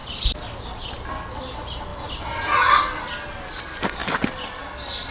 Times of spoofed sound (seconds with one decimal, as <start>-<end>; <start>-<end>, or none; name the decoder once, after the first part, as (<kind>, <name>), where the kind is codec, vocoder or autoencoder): 1.9-2.4 (vocoder, BigVGAN v2)